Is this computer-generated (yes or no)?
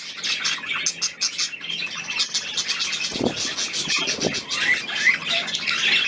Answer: no